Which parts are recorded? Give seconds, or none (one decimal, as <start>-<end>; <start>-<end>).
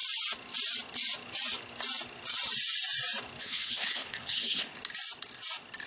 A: 0.0-3.4; 4.7-5.9